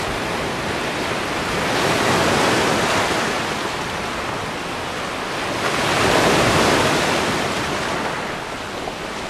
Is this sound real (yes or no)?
yes